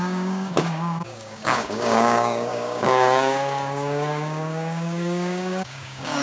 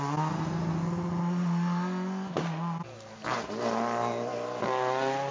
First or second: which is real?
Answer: second